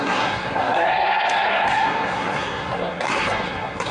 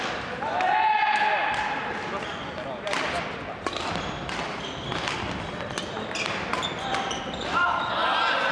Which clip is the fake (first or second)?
first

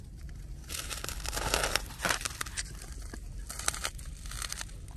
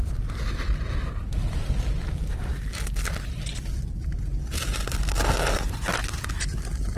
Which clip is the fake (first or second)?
first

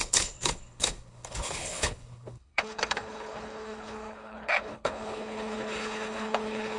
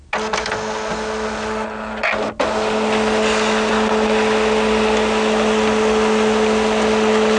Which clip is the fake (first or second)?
first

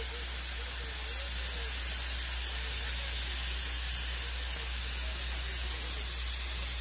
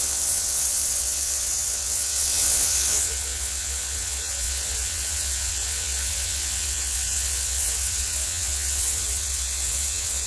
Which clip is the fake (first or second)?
second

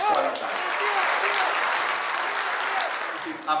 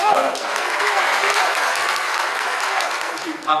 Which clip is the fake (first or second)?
second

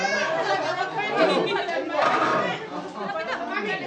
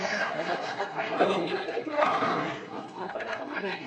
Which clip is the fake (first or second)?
second